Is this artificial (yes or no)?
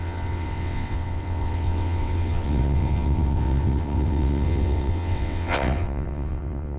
yes